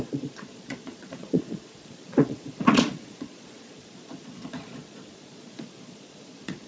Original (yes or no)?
no